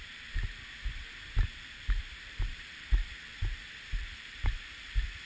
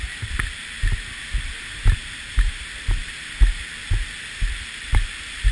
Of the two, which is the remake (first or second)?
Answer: first